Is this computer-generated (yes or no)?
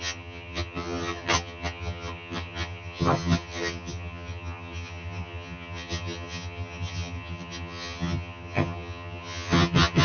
yes